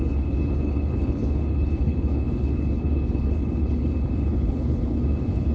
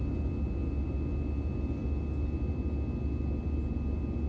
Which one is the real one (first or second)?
second